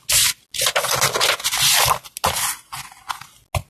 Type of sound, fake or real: real